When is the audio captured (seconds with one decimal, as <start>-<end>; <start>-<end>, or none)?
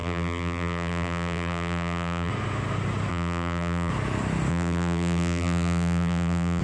2.3-3.1; 3.9-4.5